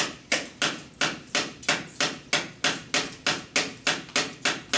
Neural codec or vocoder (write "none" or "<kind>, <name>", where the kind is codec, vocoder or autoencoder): none